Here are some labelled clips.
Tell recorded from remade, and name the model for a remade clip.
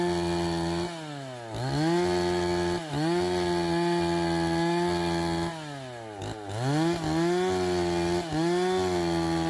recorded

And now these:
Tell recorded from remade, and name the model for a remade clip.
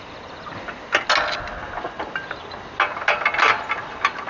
recorded